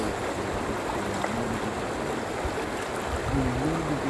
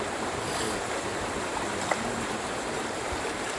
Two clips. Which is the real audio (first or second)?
first